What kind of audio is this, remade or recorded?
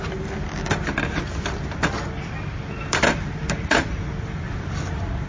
recorded